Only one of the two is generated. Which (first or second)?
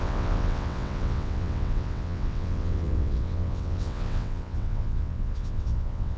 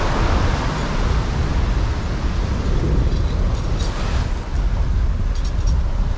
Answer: first